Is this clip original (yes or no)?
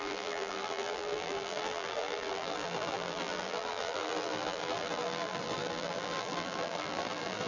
no